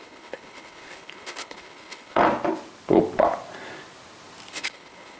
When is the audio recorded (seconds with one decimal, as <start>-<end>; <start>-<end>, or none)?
2.2-4.5